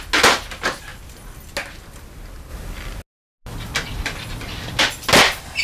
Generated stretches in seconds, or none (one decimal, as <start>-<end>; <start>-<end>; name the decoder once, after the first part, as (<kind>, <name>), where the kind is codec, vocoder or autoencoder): none